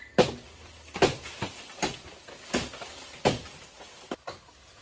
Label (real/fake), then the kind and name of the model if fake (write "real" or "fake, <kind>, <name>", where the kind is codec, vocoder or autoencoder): real